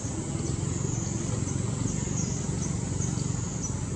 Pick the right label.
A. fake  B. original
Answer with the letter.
B